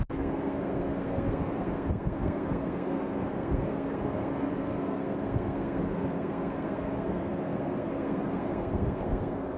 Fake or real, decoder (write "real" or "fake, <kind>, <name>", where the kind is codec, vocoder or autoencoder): fake, codec, SNAC